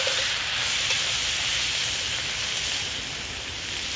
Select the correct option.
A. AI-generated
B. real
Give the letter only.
B